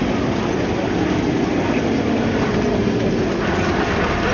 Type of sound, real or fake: real